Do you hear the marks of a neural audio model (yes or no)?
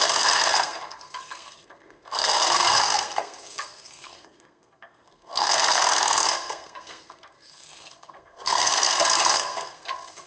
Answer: yes